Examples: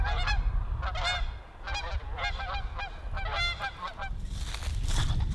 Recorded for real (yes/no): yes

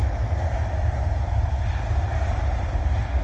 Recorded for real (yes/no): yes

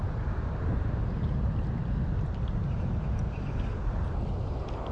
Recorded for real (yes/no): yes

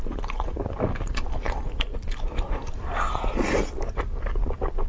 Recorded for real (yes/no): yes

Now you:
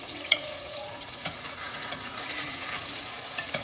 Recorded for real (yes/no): no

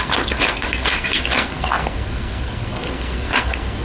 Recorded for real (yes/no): no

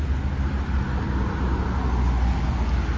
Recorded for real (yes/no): yes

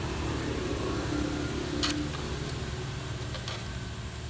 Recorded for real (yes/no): yes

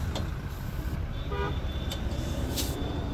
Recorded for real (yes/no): yes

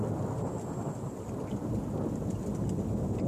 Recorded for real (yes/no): yes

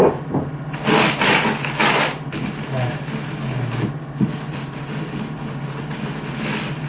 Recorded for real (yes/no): yes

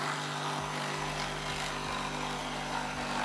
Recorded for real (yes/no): yes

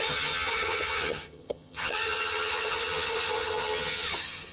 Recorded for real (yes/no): no